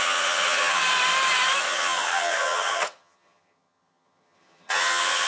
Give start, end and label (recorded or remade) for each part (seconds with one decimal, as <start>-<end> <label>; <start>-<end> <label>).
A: 0.0-0.8 remade; 0.8-1.6 recorded; 1.6-5.3 remade